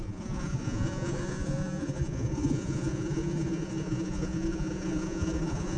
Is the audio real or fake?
fake